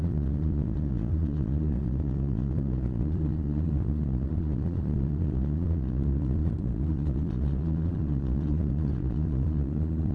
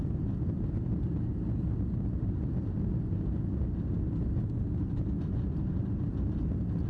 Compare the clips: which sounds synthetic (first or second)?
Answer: first